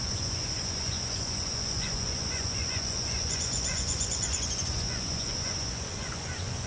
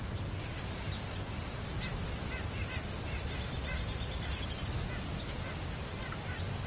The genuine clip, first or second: second